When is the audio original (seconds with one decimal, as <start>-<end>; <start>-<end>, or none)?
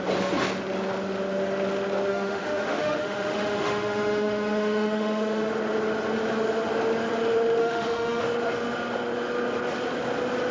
0.0-2.1; 5.5-7.6; 8.2-10.5